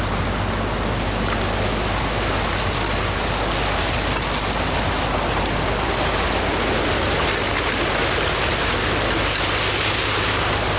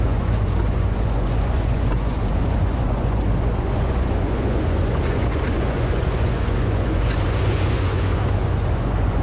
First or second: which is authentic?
first